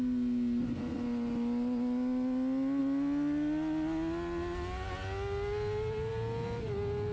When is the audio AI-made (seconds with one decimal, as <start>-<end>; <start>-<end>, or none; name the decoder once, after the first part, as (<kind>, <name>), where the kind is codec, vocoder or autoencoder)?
none